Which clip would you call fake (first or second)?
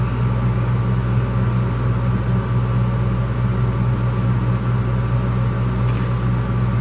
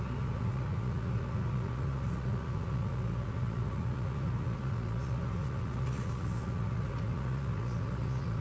second